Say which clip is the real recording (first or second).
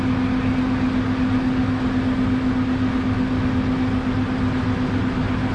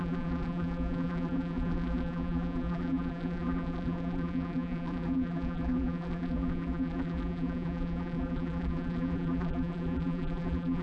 first